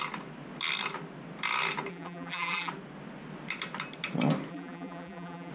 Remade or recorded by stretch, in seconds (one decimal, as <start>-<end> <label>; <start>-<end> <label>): 0.0-1.9 recorded; 1.9-2.7 remade; 2.7-4.5 recorded; 4.5-5.5 remade